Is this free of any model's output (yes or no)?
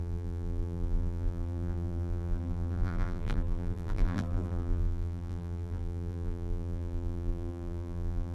no